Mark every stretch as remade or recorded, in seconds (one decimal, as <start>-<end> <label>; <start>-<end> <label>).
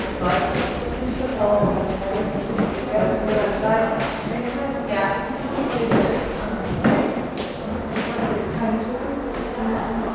0.0-2.6 remade; 2.6-5.9 recorded; 5.9-8.2 remade; 8.2-9.5 recorded; 9.5-10.1 remade